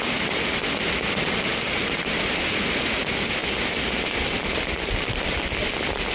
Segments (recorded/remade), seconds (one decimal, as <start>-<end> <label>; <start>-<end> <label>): 0.0-6.1 recorded